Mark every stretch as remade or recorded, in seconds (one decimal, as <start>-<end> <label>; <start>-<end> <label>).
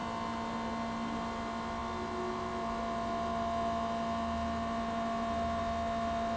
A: 0.0-6.4 recorded